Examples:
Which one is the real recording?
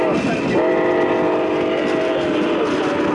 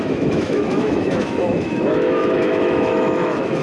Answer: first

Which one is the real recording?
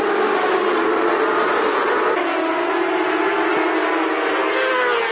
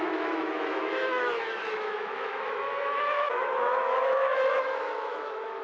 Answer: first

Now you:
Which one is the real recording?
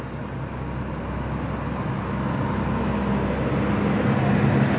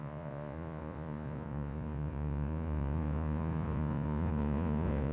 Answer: first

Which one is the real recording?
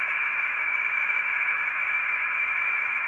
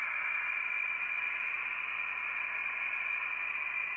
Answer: second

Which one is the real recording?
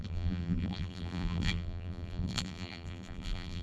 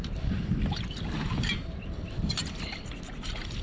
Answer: second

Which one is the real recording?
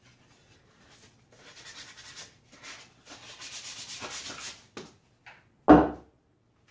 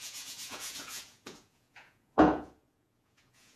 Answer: first